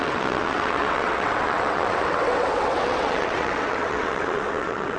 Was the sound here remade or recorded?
remade